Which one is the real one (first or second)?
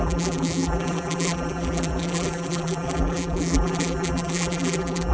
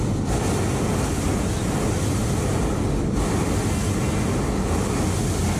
second